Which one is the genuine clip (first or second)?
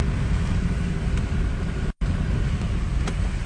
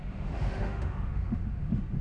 first